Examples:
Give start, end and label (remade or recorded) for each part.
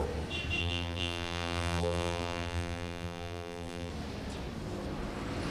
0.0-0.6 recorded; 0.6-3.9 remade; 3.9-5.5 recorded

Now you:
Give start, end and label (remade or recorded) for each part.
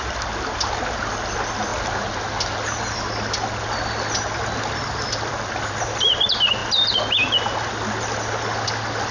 0.0-9.1 recorded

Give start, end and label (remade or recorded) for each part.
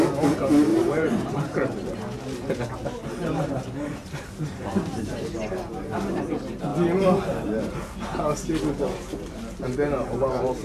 0.0-0.7 recorded; 0.7-1.9 remade; 1.9-3.0 recorded; 3.0-5.0 remade; 5.0-10.6 recorded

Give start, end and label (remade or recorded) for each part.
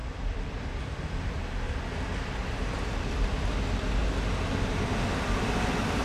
0.0-2.4 remade; 2.4-2.9 recorded; 2.9-4.0 remade; 4.0-6.0 recorded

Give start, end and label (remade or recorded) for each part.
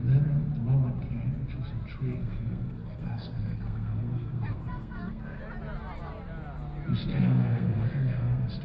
0.0-2.2 recorded; 2.2-5.4 remade; 5.4-7.1 recorded; 7.1-8.6 remade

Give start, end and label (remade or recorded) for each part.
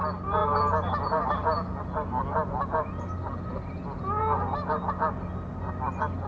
0.0-6.3 recorded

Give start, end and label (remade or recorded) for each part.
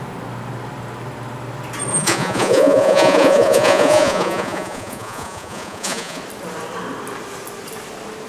0.0-1.9 recorded; 1.9-6.2 remade; 6.2-8.3 recorded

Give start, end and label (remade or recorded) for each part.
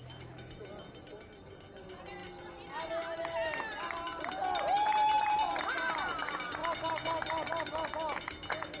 0.0-8.8 recorded